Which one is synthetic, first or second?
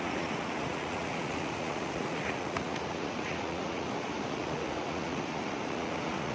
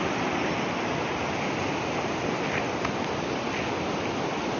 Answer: first